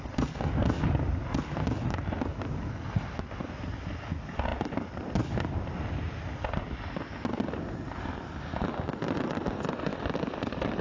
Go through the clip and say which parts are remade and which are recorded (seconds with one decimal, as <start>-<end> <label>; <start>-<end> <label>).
0.0-4.5 recorded; 4.5-5.6 remade; 5.6-9.9 recorded; 9.9-10.8 remade